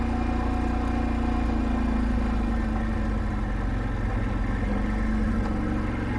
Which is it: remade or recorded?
recorded